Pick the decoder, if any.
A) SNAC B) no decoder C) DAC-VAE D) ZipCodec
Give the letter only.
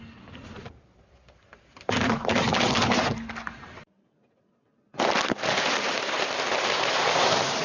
B